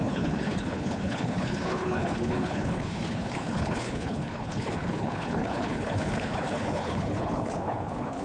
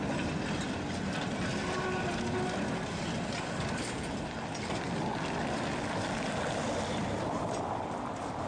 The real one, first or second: second